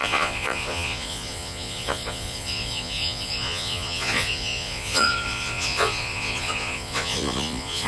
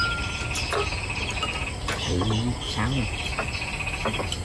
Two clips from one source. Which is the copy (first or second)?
first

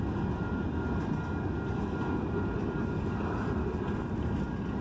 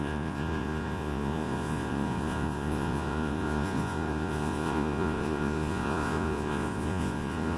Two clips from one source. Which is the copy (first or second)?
second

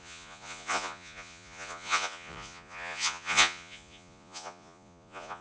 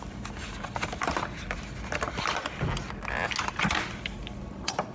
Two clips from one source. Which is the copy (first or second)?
first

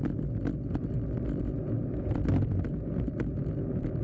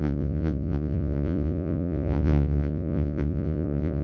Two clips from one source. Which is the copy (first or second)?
second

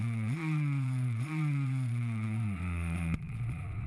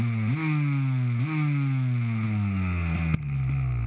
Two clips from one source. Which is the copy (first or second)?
first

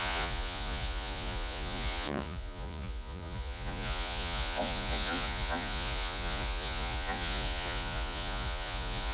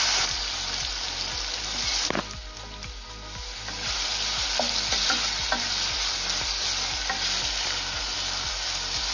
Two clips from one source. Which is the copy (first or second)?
first